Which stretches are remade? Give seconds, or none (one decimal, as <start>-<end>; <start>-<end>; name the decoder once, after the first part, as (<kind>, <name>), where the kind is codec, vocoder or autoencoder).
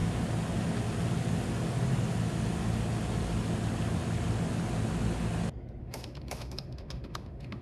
5.8-7.6 (autoencoder, DAC-VAE)